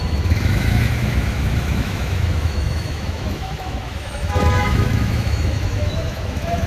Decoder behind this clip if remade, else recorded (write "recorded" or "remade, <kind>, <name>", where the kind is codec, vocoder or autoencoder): remade, autoencoder, DAC-VAE